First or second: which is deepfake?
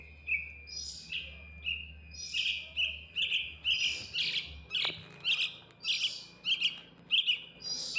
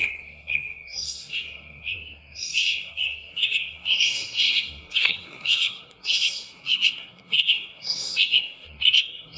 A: second